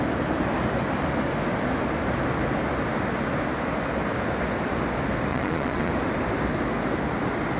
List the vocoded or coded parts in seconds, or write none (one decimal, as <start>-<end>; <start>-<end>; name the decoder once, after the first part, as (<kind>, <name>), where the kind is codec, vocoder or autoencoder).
5.3-5.9 (vocoder, Vocos)